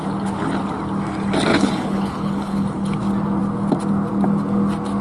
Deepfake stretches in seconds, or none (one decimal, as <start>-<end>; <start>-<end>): 1.5-3.0